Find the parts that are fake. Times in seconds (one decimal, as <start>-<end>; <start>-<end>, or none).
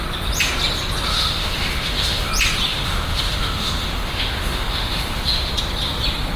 1.1-2.3; 2.7-5.5